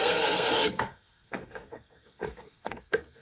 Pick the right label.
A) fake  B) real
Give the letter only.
A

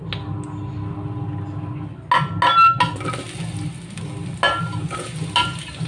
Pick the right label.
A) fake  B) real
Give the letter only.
B